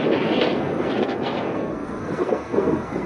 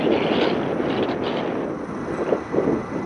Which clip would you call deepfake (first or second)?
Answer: first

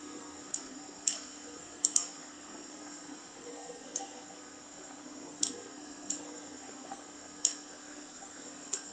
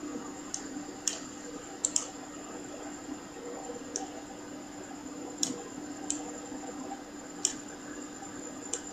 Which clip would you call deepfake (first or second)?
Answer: first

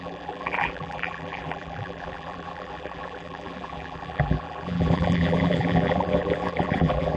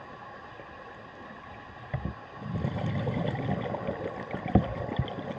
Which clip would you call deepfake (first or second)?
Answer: first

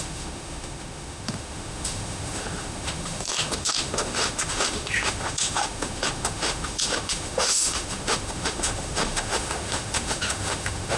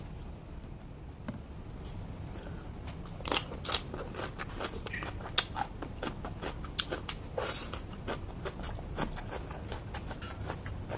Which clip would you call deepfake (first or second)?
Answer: first